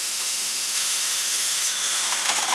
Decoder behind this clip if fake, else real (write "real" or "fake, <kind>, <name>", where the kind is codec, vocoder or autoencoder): fake, autoencoder, DAC-VAE